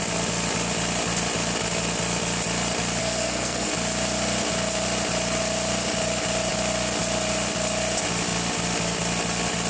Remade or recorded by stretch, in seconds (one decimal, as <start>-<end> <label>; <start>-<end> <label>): 0.0-3.0 recorded; 3.0-3.7 remade; 3.7-9.7 recorded